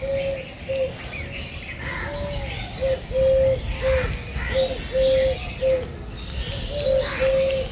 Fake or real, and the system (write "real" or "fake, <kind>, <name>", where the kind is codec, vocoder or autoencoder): real